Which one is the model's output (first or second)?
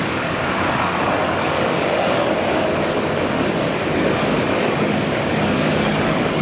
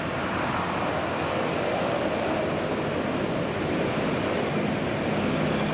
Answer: first